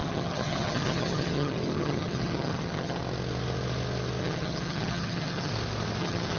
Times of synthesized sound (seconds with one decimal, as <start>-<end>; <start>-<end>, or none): 0.0-3.0; 4.2-5.5; 6.0-6.4